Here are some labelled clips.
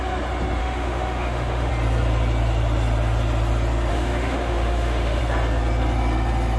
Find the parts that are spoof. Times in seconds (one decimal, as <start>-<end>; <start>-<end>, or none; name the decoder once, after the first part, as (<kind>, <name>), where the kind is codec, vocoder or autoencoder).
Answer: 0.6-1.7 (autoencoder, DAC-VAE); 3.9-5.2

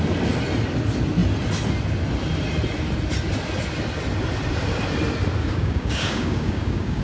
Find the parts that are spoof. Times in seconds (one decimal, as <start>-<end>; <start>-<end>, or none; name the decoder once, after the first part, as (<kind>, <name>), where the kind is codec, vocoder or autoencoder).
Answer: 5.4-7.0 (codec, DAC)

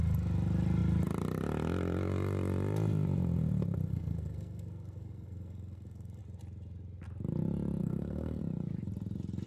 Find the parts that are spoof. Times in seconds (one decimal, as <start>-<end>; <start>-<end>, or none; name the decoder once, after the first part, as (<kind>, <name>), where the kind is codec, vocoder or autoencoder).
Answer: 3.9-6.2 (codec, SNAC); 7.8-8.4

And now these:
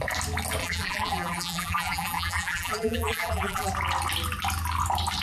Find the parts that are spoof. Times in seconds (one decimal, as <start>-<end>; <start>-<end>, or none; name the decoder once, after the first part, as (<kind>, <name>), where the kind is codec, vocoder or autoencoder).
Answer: 0.6-3.7 (vocoder, BigVGAN v2)

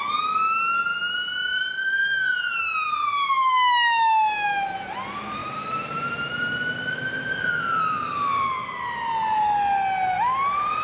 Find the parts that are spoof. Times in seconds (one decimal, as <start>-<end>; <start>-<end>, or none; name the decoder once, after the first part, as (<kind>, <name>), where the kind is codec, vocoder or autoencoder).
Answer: 5.4-9.4 (vocoder, BigVGAN v2)

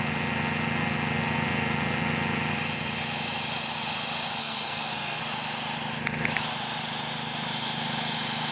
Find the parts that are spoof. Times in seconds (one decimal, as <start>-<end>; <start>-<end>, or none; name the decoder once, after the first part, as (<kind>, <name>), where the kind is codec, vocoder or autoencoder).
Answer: 4.4-5.2 (codec, SNAC)

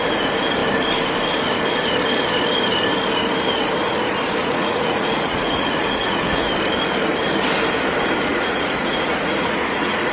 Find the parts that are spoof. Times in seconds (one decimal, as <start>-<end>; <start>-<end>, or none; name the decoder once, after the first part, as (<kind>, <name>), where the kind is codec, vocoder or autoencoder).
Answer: 4.4-6.5 (vocoder, Vocos); 8.3-10.1

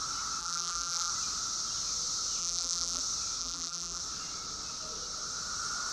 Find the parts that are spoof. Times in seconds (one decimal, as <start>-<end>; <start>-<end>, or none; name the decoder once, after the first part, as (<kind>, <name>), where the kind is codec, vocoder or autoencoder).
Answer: 0.4-1.1 (vocoder, BigVGAN v2); 2.4-3.0; 3.4-4.0